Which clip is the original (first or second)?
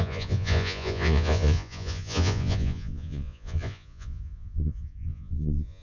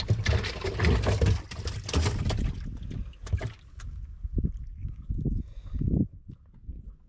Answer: second